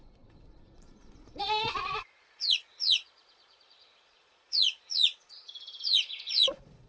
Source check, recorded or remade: remade